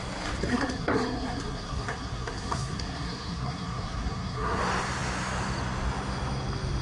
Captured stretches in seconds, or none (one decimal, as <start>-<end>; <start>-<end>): 0.0-0.5; 4.6-6.8